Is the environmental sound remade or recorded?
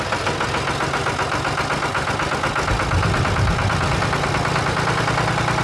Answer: recorded